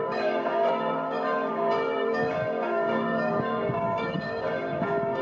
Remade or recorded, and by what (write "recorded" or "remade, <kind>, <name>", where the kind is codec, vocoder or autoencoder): remade, codec, DAC